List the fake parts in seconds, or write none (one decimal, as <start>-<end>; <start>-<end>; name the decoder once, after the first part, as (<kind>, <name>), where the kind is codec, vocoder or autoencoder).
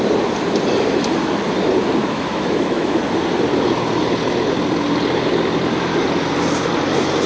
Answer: 2.0-3.0 (autoencoder, DAC-VAE)